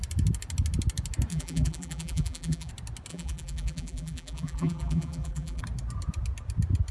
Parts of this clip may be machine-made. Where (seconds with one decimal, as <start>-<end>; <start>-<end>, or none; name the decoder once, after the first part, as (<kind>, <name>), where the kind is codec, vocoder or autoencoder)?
1.3-2.7 (vocoder, BigVGAN v2); 3.1-5.6